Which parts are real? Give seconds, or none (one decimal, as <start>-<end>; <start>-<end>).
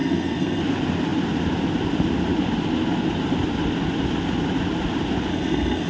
0.6-5.3